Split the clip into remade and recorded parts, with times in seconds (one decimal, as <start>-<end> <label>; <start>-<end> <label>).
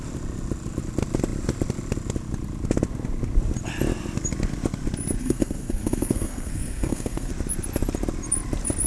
0.0-5.2 recorded; 5.2-7.3 remade; 7.3-8.9 recorded